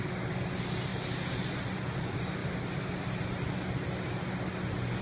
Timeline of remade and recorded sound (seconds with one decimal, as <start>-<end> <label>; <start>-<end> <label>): 0.0-5.0 recorded